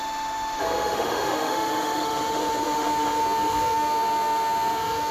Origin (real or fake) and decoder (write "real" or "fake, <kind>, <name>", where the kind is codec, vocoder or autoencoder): fake, autoencoder, DAC-VAE